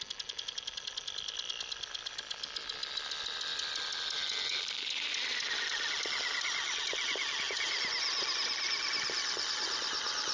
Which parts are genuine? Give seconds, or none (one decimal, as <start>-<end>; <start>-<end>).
0.0-10.3